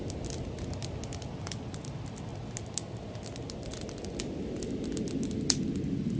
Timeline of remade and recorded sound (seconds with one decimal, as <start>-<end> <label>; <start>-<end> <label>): 0.0-6.2 recorded